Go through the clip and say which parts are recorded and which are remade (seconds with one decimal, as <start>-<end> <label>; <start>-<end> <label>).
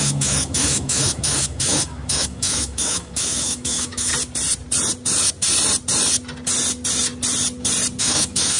0.0-4.1 remade; 4.1-8.0 recorded; 8.0-8.6 remade